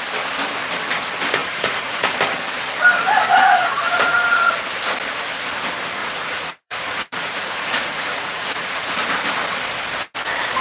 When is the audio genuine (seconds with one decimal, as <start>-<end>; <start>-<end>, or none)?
0.0-1.4; 2.1-3.3; 4.5-6.0; 8.9-10.6